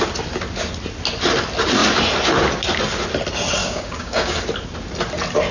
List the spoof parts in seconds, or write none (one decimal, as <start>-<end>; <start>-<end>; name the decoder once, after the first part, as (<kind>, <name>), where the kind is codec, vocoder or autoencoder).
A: 3.6-4.4 (codec, DAC)